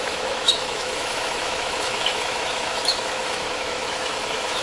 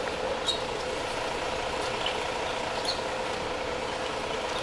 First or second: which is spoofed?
first